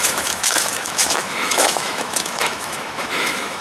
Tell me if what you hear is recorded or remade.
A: remade